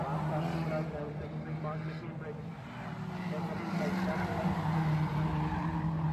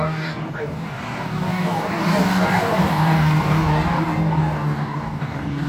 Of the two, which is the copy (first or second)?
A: second